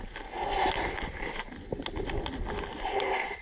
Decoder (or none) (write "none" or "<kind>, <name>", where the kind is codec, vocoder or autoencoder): none